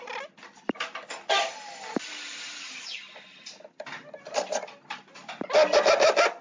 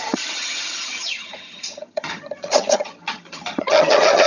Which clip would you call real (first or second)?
first